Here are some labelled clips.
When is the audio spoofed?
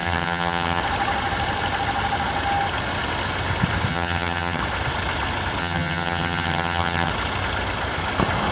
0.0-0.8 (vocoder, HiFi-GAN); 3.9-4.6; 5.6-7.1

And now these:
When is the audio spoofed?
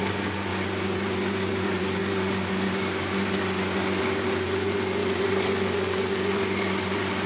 none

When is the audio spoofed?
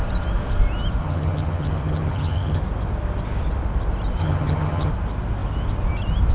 1.0-2.6 (vocoder, HiFi-GAN); 4.2-4.9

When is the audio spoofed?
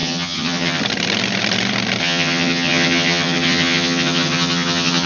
0.0-0.8 (vocoder, HiFi-GAN); 2.0-5.1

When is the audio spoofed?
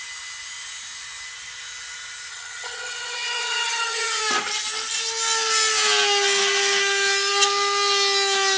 2.3-4.2 (vocoder, HiFi-GAN)